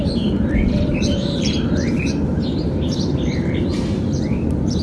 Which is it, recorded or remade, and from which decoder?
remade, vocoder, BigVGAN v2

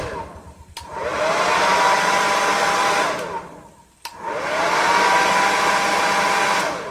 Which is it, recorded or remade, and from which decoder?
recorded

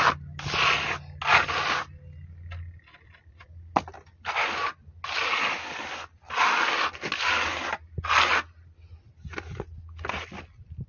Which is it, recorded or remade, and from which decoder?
recorded